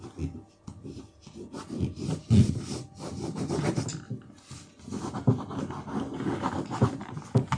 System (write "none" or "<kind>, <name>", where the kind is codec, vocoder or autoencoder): none